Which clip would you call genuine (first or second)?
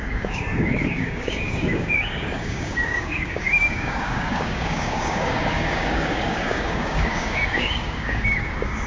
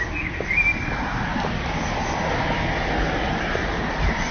second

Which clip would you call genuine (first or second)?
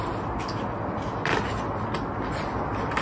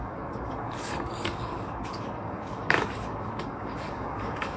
first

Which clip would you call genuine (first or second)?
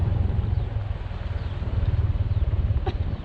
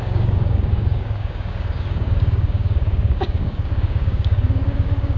first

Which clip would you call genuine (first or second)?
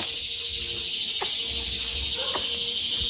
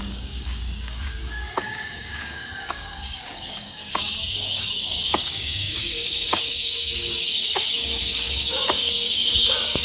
first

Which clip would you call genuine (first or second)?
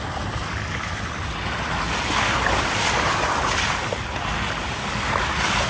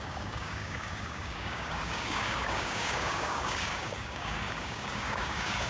first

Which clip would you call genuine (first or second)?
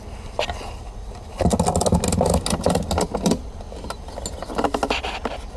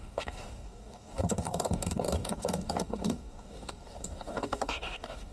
first